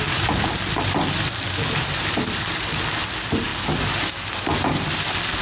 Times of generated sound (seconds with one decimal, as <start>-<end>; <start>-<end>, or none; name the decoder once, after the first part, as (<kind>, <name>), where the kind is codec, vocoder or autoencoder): 0.0-3.5 (vocoder, BigVGAN v2)